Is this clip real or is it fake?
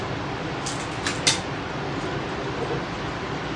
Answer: real